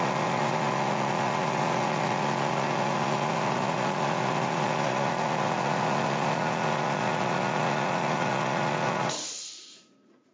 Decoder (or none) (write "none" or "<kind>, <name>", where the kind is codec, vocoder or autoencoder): vocoder, Vocos